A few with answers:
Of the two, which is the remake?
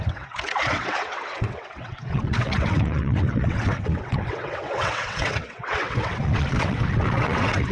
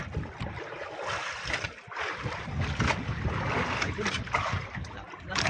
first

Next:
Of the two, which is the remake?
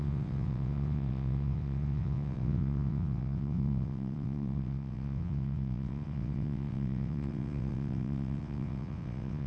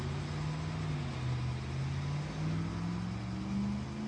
first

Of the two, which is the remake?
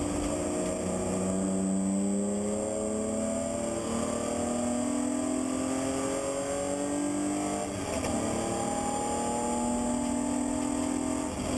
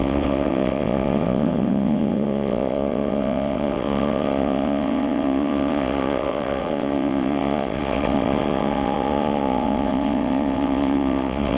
second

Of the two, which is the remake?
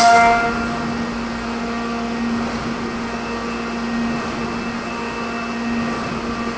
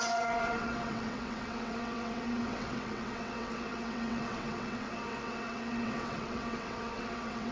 second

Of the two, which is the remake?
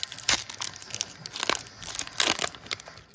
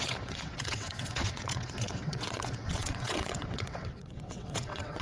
second